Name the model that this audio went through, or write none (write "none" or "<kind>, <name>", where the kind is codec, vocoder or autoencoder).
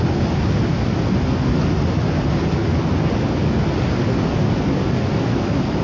none